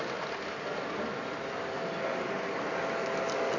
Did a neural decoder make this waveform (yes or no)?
no